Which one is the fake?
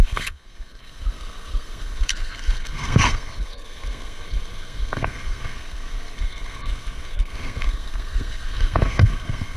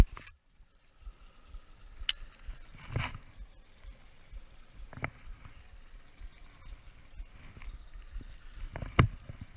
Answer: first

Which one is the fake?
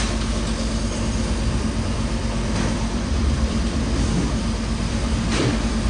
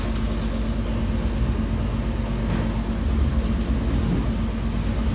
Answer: first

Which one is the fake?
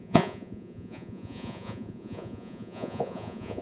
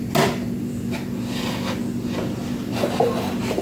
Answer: first